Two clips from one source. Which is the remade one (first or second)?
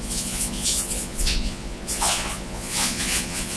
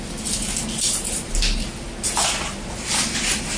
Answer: first